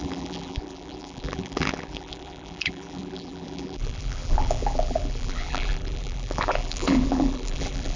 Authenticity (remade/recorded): remade